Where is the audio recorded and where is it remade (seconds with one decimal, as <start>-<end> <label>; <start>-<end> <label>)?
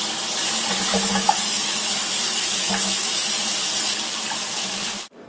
0.0-0.9 recorded; 0.9-3.3 remade; 3.3-5.3 recorded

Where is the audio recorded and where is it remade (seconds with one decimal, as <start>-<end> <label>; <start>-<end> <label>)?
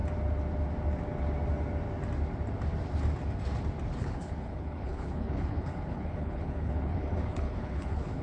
0.0-4.0 recorded; 4.0-8.2 remade